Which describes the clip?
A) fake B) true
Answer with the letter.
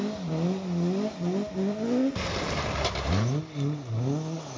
B